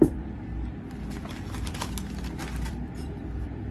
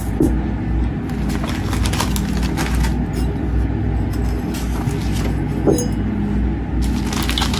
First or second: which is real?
second